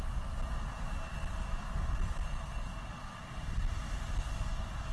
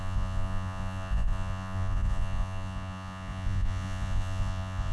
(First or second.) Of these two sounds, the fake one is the second